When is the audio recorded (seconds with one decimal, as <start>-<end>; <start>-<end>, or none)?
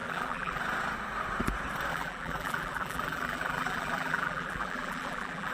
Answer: 0.6-1.9